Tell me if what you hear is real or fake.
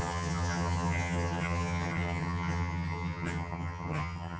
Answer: fake